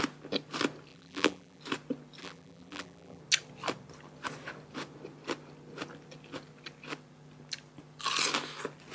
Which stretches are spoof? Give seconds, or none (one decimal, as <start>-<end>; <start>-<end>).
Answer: 0.9-1.6; 2.2-3.2